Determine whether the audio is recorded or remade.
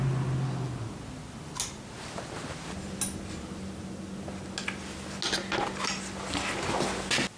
recorded